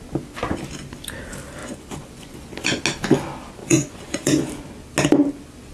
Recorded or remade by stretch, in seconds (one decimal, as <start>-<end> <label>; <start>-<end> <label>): 0.0-1.6 recorded; 1.6-2.8 remade; 2.8-3.6 recorded; 3.6-4.5 remade; 4.5-5.7 recorded